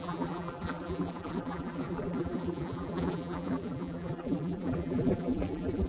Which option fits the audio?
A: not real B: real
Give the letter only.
A